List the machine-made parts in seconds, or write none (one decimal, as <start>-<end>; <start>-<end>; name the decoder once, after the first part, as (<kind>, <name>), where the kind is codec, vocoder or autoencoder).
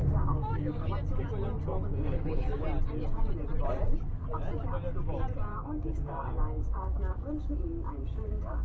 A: 0.0-0.9 (codec, DAC); 1.7-2.6; 5.5-7.1